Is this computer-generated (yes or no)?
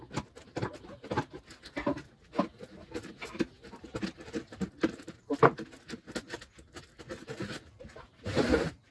no